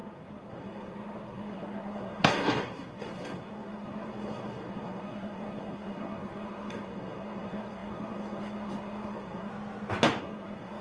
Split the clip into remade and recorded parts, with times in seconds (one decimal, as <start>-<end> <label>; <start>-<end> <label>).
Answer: 0.0-9.5 remade; 9.5-10.2 recorded; 10.2-10.8 remade